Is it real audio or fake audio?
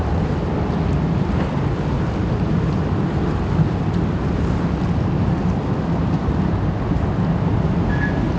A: real